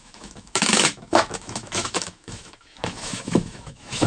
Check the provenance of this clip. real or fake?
fake